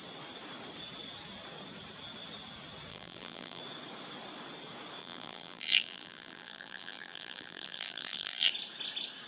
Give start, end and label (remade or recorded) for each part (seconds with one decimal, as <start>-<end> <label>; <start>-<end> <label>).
0.0-2.9 recorded; 2.9-3.6 remade; 3.6-5.0 recorded; 5.0-8.5 remade; 8.5-9.3 recorded